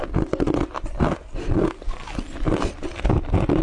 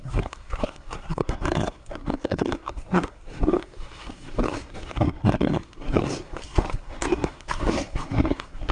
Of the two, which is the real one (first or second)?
first